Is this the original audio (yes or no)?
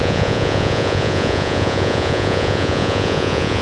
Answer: no